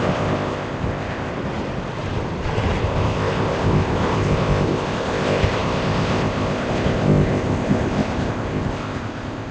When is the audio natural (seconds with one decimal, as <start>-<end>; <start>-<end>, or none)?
1.3-2.8